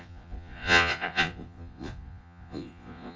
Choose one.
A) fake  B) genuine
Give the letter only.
A